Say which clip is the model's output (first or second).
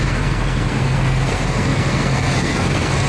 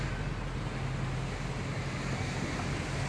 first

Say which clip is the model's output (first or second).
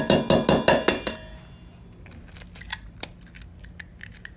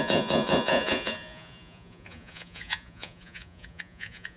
second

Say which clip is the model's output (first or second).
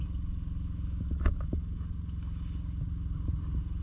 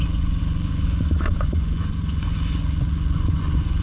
second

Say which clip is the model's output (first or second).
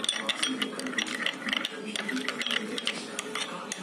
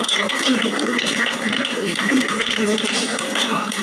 second